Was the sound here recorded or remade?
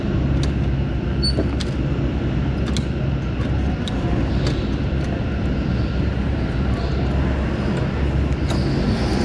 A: recorded